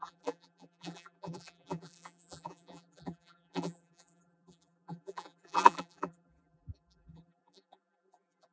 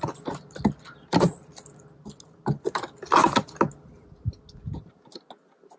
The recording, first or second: second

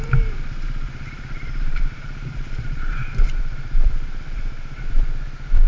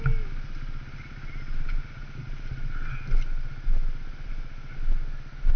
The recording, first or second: second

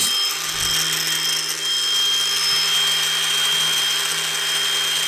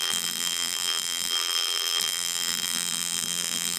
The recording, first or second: first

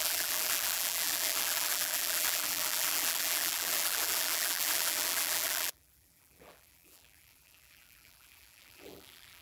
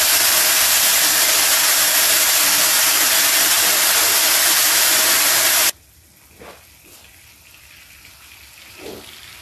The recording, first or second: second